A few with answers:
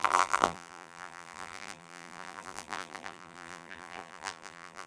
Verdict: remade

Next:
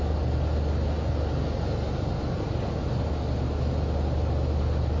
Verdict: recorded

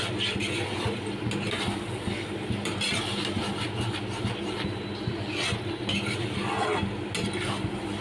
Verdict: recorded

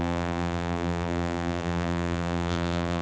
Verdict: remade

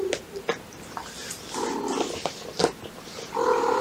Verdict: recorded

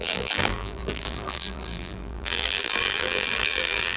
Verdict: remade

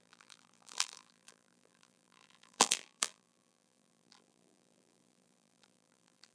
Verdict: remade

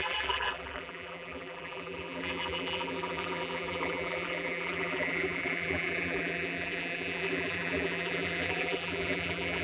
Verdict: remade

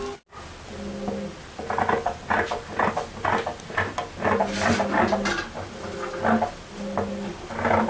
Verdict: recorded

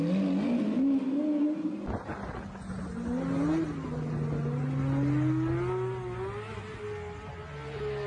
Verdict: recorded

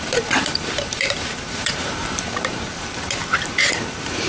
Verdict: remade